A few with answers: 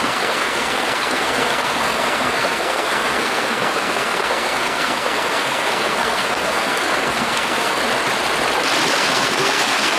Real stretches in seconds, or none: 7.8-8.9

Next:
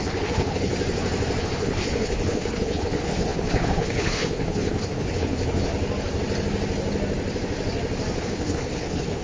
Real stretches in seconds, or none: 0.7-1.4; 5.7-8.2

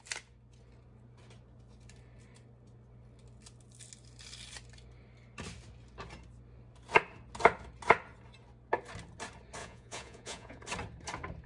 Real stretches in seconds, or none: 0.0-9.6; 10.6-11.5

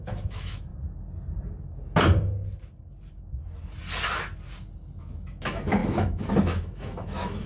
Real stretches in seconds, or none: 0.7-5.0

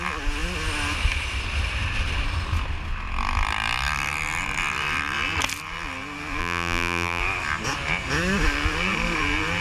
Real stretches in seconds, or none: 0.0-6.4; 7.2-9.6

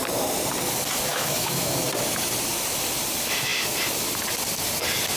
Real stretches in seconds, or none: 0.0-1.1; 1.8-5.2

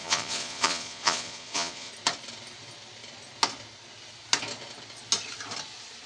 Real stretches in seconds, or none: 1.9-6.1

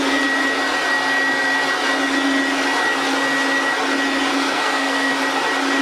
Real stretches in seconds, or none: 0.0-4.3; 5.1-5.8